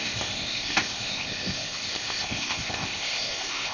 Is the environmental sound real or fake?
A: fake